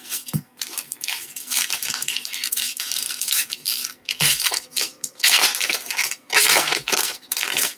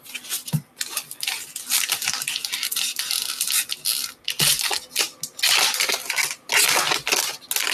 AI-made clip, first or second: first